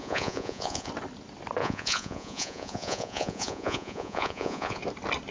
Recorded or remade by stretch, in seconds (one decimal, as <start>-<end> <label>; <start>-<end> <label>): 0.0-0.9 remade; 0.9-1.6 recorded; 1.6-4.8 remade; 4.8-5.3 recorded